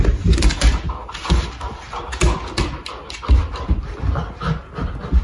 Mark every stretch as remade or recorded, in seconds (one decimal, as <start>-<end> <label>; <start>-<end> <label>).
0.0-5.2 recorded